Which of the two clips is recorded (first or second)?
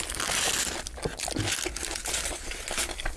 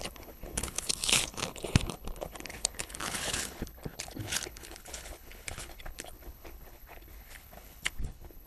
first